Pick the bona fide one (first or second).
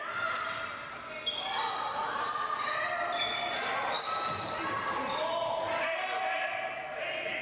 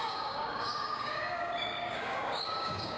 first